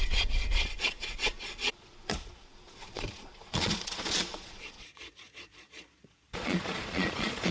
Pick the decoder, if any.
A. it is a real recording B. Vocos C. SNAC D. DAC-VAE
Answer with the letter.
B